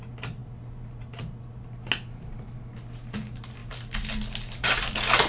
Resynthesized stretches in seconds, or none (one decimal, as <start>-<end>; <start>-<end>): 3.6-5.3